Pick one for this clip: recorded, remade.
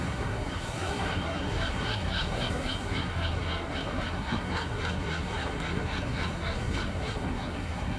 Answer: remade